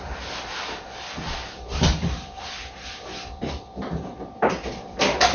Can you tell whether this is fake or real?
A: real